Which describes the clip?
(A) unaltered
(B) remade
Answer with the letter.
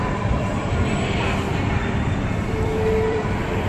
B